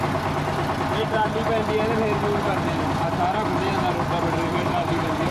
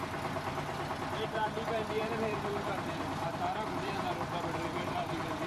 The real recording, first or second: first